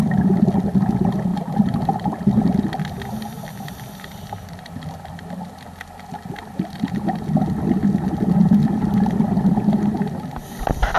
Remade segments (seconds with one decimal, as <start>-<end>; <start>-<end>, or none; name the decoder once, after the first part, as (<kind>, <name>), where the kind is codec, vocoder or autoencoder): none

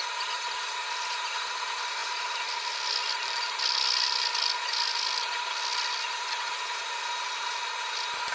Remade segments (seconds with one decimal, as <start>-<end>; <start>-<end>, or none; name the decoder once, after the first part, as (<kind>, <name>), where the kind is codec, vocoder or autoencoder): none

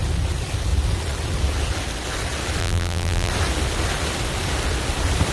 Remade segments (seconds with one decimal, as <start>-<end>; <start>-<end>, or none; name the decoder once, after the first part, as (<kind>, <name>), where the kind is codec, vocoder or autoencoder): 2.6-3.3 (vocoder, BigVGAN v2)